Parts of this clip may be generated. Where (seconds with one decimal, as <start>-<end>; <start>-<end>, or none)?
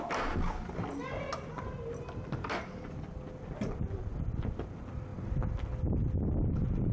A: none